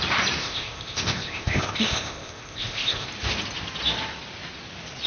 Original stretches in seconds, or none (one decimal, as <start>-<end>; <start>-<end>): 0.0-0.4; 3.1-5.1